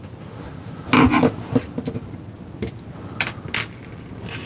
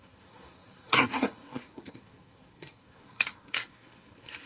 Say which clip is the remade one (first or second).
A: second